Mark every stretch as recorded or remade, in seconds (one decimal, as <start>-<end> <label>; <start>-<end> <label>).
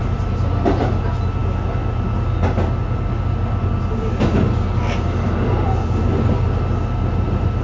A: 0.0-7.6 recorded